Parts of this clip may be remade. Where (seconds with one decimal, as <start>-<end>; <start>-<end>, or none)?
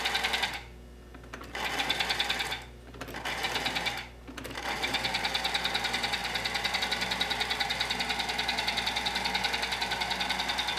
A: 0.0-6.2; 6.8-10.8